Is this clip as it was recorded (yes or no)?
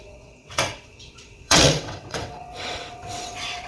no